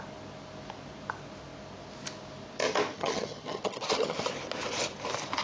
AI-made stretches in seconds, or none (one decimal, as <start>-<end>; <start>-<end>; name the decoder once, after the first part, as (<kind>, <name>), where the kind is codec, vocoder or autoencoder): 2.9-4.3 (vocoder, HiFi-GAN)